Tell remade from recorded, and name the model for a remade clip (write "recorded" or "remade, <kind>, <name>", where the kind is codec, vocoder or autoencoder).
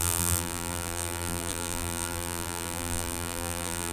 remade, vocoder, BigVGAN v2